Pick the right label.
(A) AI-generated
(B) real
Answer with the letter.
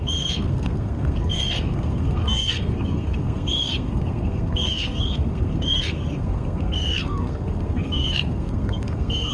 A